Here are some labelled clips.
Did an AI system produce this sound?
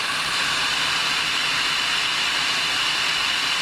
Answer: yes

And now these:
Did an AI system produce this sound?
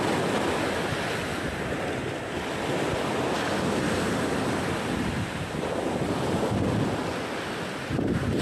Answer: no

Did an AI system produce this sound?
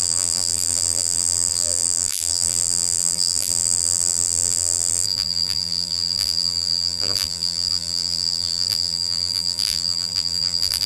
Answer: yes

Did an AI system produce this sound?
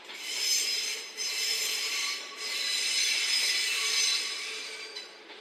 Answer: yes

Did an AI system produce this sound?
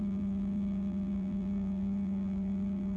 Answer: yes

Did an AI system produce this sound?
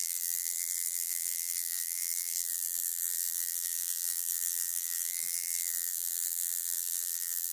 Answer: yes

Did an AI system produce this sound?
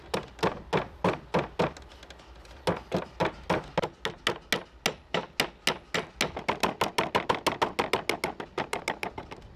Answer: no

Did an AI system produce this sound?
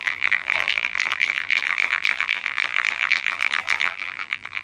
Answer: yes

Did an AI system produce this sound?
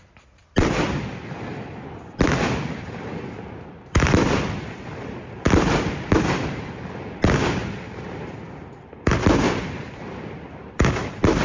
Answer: yes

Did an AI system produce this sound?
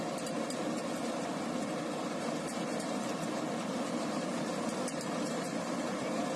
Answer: yes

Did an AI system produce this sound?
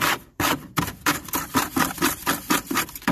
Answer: yes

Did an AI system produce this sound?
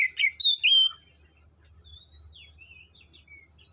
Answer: no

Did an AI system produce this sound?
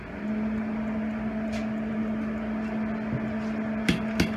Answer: no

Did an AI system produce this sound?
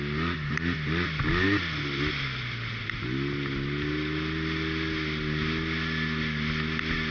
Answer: no